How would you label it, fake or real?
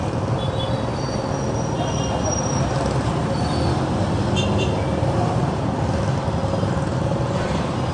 real